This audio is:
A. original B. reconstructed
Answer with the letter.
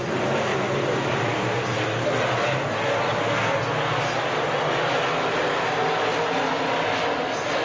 A